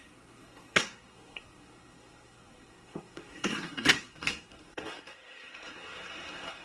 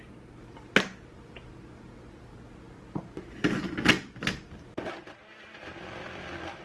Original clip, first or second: second